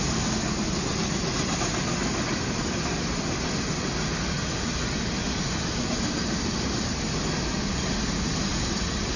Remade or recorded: recorded